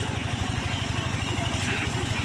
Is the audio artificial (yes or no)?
yes